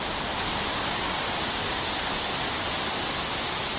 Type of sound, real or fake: real